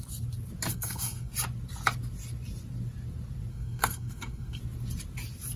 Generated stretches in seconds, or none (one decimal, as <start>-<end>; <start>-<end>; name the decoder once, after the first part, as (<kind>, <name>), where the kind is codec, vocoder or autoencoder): 0.7-1.3 (codec, SNAC); 3.5-4.6